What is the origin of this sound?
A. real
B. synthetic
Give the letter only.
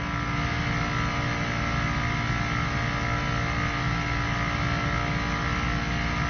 A